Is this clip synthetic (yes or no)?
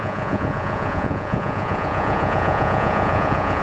yes